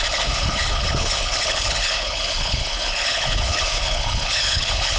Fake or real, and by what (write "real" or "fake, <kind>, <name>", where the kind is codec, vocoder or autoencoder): fake, codec, HILCodec